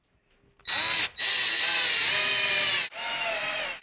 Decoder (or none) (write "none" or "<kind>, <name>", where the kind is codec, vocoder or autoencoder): none